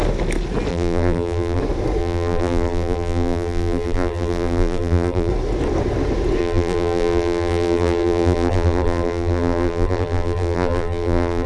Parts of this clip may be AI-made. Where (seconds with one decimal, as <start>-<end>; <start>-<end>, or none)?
0.7-1.6; 2.0-5.3; 6.4-11.5